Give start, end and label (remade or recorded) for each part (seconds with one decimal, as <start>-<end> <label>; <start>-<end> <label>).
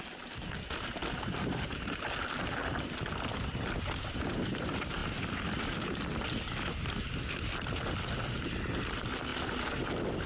0.0-10.3 recorded